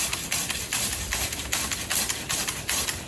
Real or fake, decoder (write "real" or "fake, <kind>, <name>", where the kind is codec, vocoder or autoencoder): real